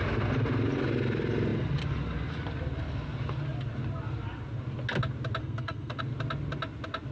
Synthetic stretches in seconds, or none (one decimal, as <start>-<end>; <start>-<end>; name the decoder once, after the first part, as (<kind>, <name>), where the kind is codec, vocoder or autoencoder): 5.4-6.0 (codec, SNAC)